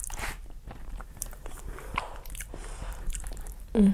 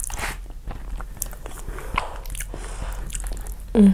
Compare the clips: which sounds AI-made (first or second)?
first